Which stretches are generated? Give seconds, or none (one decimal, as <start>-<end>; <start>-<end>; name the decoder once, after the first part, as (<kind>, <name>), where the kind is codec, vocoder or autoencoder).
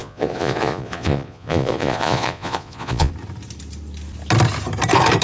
0.0-3.1 (vocoder, Vocos)